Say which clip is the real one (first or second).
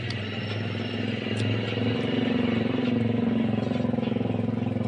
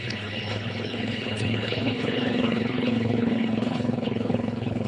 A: first